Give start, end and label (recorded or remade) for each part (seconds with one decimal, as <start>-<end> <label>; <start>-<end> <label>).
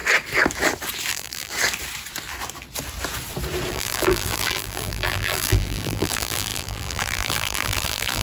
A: 0.0-1.1 recorded; 1.1-1.5 remade; 1.5-3.7 recorded; 3.7-8.2 remade